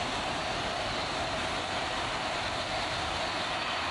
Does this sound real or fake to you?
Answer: real